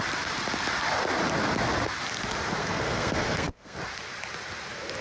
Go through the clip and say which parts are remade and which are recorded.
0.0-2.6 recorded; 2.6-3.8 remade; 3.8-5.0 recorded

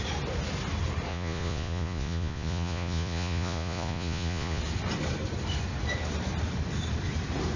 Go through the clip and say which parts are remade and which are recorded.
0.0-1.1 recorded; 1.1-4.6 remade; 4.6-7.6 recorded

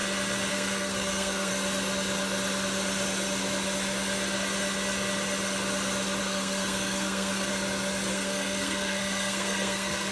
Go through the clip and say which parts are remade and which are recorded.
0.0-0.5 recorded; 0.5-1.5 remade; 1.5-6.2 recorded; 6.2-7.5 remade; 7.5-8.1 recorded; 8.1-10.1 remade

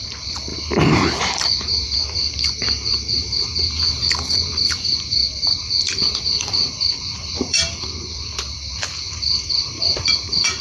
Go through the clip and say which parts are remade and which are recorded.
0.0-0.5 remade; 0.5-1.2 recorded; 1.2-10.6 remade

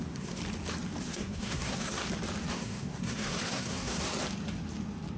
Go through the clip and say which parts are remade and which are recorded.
0.0-0.4 remade; 0.4-1.0 recorded; 1.0-2.0 remade; 2.0-2.5 recorded; 2.5-4.1 remade; 4.1-5.2 recorded

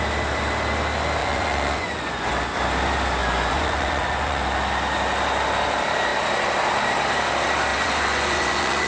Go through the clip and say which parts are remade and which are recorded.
0.0-1.2 recorded; 1.2-2.3 remade; 2.3-3.2 recorded; 3.2-4.4 remade; 4.4-7.7 recorded; 7.7-8.9 remade

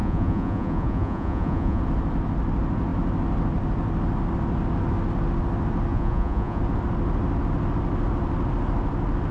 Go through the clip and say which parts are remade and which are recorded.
0.0-1.8 remade; 1.8-5.9 recorded; 5.9-6.6 remade; 6.6-9.3 recorded